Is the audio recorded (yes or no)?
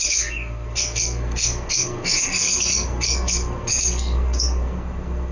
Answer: no